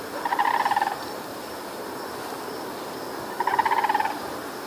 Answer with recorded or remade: recorded